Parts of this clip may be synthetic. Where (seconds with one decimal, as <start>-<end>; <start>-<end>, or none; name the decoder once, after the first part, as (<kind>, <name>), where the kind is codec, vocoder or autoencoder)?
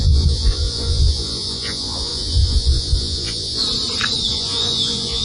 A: 0.0-3.6 (vocoder, Vocos); 4.3-5.2